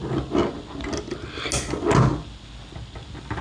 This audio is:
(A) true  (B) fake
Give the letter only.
A